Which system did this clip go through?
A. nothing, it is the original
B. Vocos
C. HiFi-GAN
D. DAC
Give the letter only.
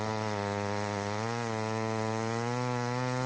A